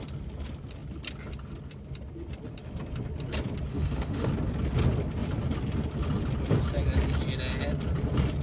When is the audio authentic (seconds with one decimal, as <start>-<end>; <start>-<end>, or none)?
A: 0.0-3.7; 4.3-8.4

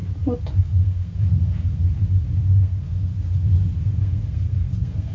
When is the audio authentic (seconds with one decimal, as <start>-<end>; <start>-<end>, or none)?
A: 0.0-0.6; 1.8-2.6; 3.1-3.8